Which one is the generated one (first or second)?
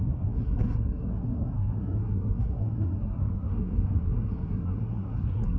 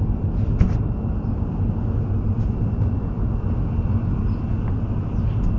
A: first